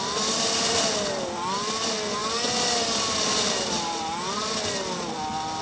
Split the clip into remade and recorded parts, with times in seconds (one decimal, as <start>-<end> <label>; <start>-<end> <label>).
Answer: 0.0-5.6 recorded